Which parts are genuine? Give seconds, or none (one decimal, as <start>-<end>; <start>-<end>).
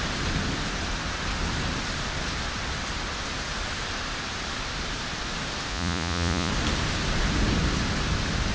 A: 0.0-5.7; 6.5-8.5